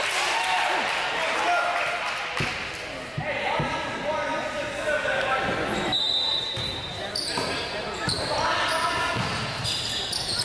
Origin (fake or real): real